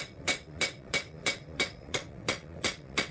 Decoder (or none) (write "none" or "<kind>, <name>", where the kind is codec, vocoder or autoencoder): vocoder, WaveNeXt